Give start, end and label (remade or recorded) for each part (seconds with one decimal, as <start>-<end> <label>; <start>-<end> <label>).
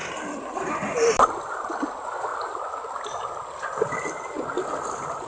0.0-5.3 recorded